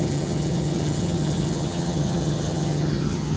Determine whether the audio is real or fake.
fake